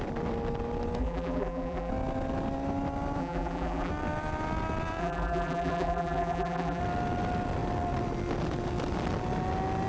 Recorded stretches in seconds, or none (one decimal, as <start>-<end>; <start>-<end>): 0.0-1.0; 1.9-3.2; 3.9-5.0; 6.8-9.9